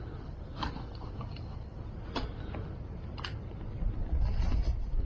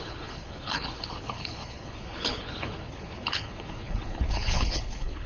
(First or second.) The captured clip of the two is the first